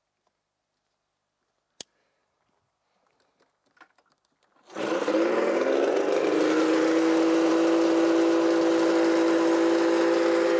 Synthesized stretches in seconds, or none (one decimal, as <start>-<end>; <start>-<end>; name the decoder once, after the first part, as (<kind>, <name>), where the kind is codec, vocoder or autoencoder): none